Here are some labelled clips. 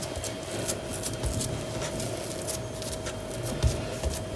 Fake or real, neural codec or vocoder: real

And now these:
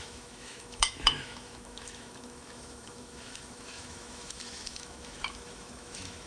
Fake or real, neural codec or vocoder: fake, autoencoder, DAC-VAE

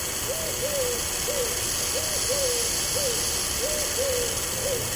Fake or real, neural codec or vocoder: real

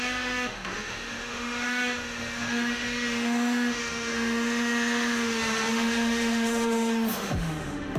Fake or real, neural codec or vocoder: fake, autoencoder, DAC-VAE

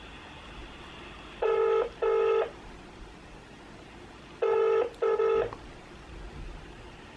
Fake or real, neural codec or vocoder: real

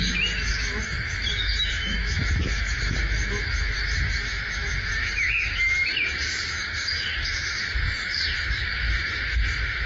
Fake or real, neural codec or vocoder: fake, autoencoder, DAC-VAE